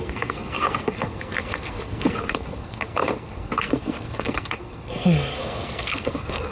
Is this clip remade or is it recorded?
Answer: remade